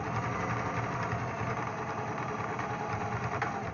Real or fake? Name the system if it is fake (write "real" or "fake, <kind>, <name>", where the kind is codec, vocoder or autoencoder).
real